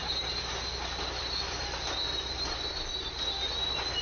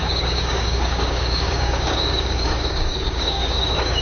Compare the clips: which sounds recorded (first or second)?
first